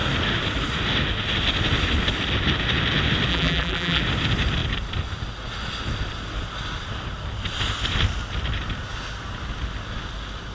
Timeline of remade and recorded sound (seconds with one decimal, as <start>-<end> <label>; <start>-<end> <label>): 0.0-3.3 recorded; 3.3-4.0 remade; 4.0-10.5 recorded